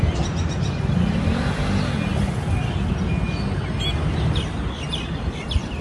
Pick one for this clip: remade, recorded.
recorded